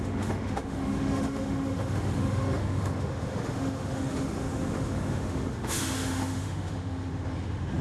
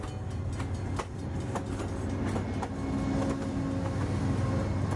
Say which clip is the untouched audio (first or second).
second